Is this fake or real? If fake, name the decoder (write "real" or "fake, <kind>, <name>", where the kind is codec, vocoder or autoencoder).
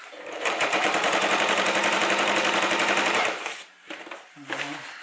fake, vocoder, BigVGAN v2